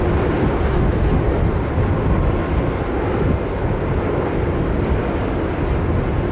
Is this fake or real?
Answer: real